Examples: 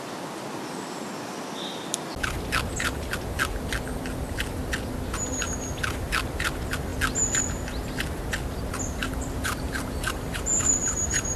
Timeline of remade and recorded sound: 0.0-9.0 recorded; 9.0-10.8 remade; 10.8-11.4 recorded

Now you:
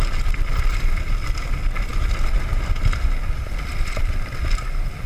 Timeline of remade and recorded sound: 0.0-5.1 recorded

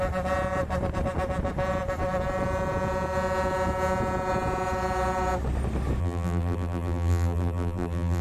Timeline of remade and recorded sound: 0.0-6.0 recorded; 6.0-8.2 remade

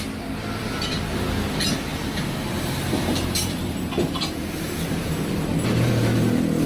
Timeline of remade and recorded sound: 0.0-0.6 recorded; 0.6-1.2 remade; 1.2-1.9 recorded; 1.9-5.9 remade; 5.9-6.7 recorded

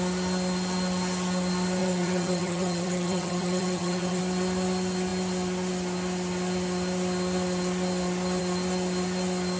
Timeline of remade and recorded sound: 0.0-1.8 recorded; 1.8-4.2 remade; 4.2-9.6 recorded

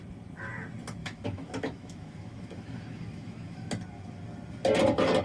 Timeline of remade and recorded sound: 0.0-1.0 recorded; 1.0-3.7 remade; 3.7-5.2 recorded

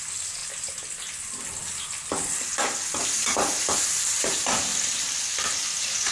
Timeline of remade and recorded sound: 0.0-0.4 remade; 0.4-3.0 recorded; 3.0-4.7 remade; 4.7-5.5 recorded; 5.5-6.1 remade

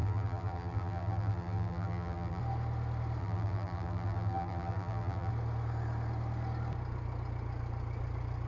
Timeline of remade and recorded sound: 0.0-2.4 remade; 2.4-3.2 recorded; 3.2-5.3 remade; 5.3-8.5 recorded